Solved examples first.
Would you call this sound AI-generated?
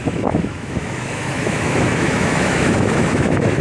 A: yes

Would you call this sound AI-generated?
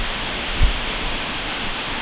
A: yes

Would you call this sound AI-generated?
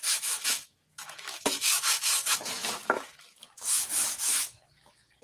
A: yes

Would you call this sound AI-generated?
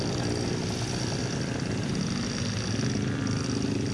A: no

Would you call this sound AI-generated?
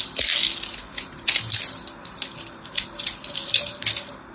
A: no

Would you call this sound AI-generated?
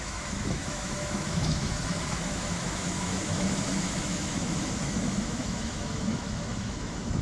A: yes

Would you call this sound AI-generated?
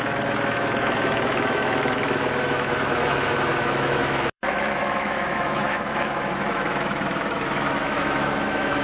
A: yes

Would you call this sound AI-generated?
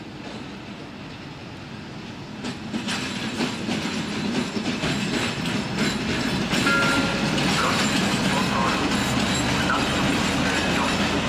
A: no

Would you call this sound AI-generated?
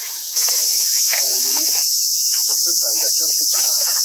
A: yes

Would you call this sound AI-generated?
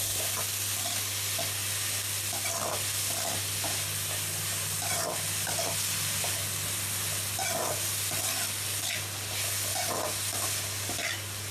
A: no